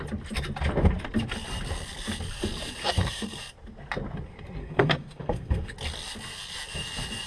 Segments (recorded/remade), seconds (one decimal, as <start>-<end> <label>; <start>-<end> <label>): 0.0-2.8 recorded; 2.8-3.4 remade; 3.4-4.6 recorded; 4.6-5.7 remade; 5.7-7.3 recorded